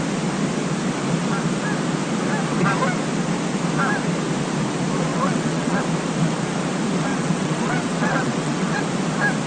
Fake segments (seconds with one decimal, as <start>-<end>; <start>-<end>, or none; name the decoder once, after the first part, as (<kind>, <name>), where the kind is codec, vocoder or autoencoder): 5.1-5.8 (vocoder, WaveNeXt); 7.1-8.8